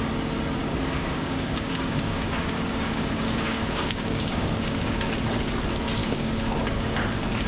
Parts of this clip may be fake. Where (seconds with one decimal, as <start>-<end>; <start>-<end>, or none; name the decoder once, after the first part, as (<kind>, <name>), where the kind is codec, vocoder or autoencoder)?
0.6-5.1 (codec, DAC); 6.0-6.8